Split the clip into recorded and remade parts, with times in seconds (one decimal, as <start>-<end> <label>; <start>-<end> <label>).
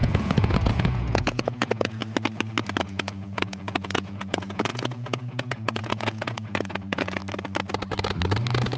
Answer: 0.0-2.0 remade; 2.0-2.8 recorded; 2.8-7.2 remade; 7.2-8.8 recorded